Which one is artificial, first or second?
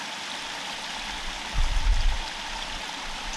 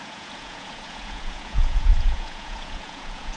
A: second